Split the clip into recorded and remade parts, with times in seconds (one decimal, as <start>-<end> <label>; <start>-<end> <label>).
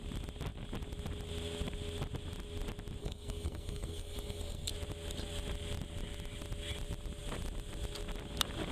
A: 0.0-3.0 recorded; 3.0-4.7 remade; 4.7-8.7 recorded